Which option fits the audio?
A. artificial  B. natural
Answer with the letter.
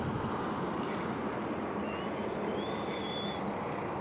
B